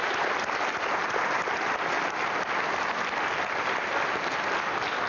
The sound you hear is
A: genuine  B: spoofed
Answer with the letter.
A